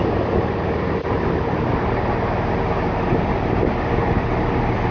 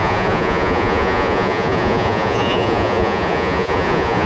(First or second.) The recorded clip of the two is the first